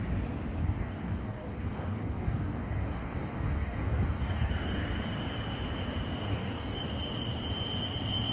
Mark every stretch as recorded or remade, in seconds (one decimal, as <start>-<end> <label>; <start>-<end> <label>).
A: 0.0-0.6 recorded; 0.6-4.5 remade; 4.5-6.3 recorded; 6.3-6.8 remade; 6.8-8.3 recorded